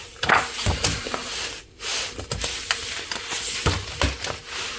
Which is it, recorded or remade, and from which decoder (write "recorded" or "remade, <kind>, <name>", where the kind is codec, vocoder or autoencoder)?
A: recorded